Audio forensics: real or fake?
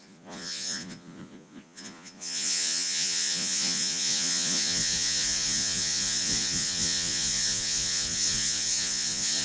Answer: fake